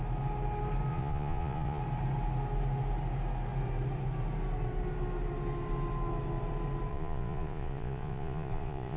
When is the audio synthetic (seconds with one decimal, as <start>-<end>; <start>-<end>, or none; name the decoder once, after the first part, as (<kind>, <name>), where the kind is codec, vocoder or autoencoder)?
0.9-1.8 (vocoder, Vocos); 6.9-9.0